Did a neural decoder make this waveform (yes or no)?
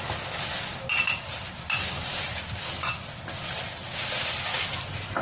no